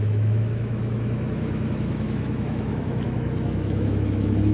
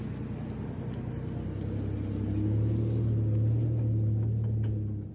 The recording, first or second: second